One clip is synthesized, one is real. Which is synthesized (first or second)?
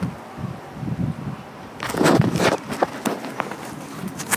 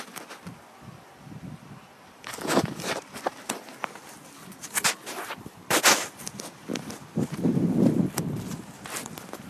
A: second